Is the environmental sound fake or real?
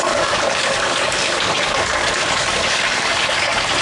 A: fake